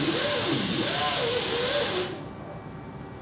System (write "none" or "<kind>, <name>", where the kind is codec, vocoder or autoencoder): none